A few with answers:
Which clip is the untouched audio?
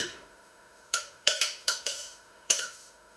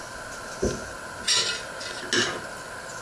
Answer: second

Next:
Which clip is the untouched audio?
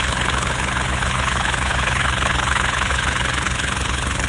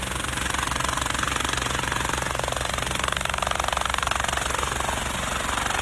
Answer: second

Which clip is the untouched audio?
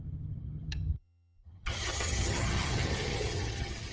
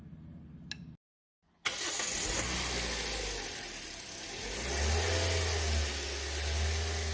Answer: second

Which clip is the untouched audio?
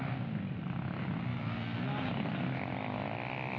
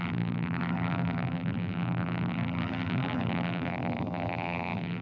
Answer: first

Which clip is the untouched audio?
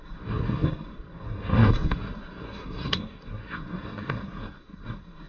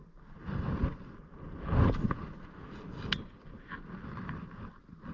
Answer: second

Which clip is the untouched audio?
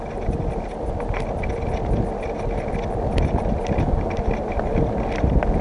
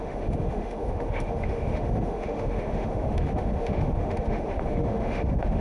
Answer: first